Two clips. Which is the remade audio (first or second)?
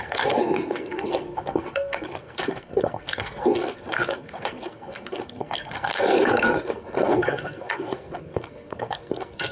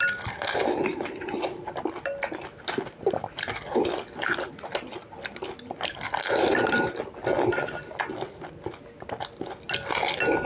first